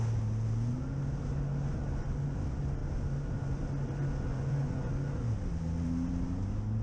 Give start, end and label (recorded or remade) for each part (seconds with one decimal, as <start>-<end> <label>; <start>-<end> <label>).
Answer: 0.0-4.3 recorded; 4.3-4.9 remade; 4.9-6.8 recorded